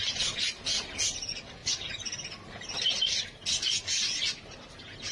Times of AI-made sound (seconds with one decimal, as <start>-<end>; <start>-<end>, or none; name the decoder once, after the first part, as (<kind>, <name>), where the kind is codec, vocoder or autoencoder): none